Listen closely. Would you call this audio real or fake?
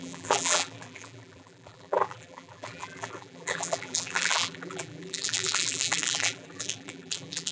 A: fake